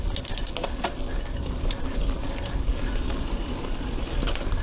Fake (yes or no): no